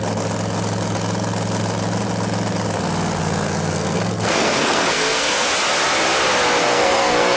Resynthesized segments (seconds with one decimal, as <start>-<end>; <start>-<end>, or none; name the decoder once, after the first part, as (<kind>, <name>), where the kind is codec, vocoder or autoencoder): 3.2-5.5 (codec, SNAC); 6.6-7.4